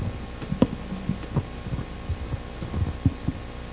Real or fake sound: real